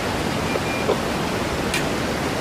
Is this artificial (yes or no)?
no